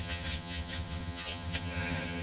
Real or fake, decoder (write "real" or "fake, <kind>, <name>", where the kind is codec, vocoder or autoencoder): fake, vocoder, HiFi-GAN